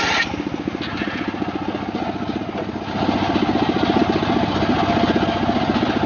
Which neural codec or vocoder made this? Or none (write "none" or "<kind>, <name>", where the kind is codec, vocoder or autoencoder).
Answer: none